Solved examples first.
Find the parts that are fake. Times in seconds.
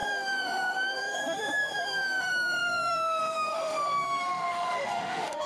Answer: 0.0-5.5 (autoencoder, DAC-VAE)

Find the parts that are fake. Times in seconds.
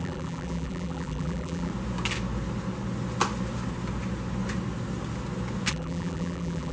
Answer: 0.0-1.7 (vocoder, BigVGAN v2); 5.7-6.7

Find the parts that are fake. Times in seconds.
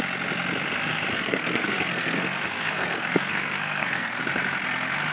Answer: 1.1-4.2 (codec, SNAC)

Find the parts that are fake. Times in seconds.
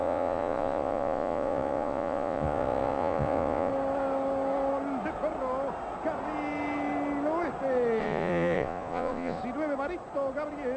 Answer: 0.0-3.7 (vocoder, Vocos); 8.0-9.4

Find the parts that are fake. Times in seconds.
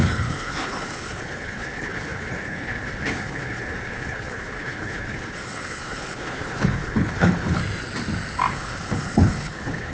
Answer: 0.0-7.6 (codec, HILCodec); 8.5-9.9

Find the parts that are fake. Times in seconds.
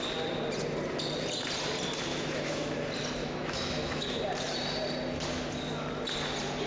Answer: 2.1-2.8 (autoencoder, DAC-VAE); 3.2-4.2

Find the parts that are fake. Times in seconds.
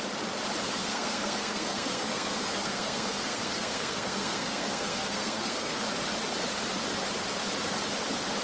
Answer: 0.8-5.8 (codec, SNAC)